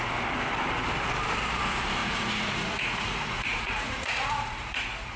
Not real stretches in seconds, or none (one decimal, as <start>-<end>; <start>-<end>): 2.0-5.2